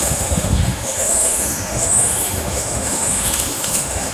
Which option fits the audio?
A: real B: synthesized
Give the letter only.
B